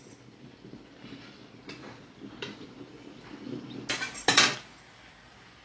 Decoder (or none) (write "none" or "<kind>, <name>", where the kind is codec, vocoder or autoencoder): none